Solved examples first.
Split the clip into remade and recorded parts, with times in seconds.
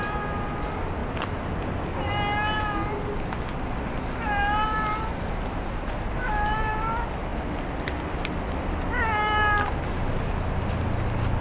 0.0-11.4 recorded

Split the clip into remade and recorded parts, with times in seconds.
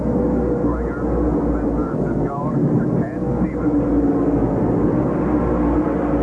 0.0-1.8 recorded; 1.8-2.5 remade; 2.5-6.2 recorded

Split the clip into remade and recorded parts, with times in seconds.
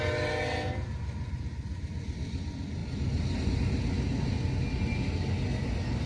0.0-6.1 recorded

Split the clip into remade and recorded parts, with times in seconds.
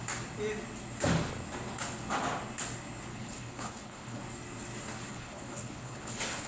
0.0-3.1 recorded; 3.1-4.2 remade; 4.2-5.1 recorded; 5.1-6.5 remade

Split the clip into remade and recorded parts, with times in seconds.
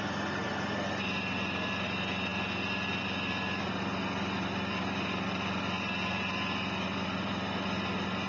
0.0-8.3 recorded